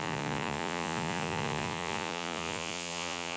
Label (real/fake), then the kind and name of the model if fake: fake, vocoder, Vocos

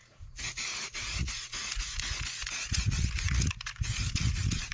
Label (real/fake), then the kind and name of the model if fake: fake, vocoder, Vocos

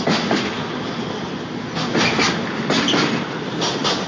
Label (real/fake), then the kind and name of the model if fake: real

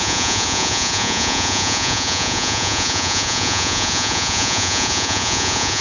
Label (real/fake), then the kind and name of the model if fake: fake, vocoder, Vocos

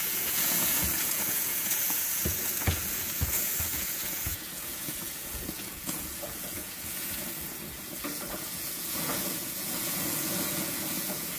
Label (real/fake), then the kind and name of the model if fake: fake, vocoder, Vocos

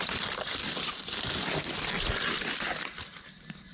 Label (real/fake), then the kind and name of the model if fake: real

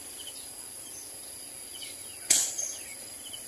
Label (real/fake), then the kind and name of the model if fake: real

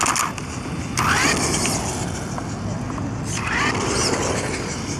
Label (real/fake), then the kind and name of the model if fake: real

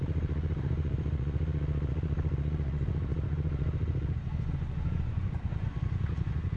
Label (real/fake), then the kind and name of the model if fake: fake, vocoder, Vocos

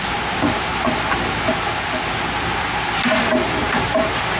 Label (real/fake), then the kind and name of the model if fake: real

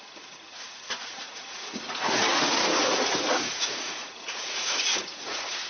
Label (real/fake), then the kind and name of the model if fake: fake, vocoder, Vocos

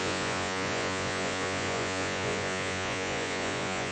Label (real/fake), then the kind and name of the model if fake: fake, vocoder, Vocos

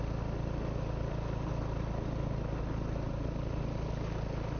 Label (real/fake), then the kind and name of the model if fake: real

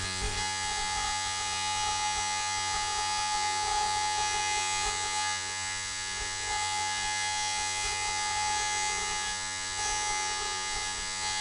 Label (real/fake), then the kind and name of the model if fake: fake, vocoder, Vocos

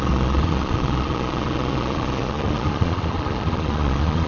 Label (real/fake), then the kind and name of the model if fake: fake, vocoder, Vocos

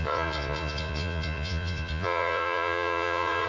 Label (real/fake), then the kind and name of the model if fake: fake, vocoder, Vocos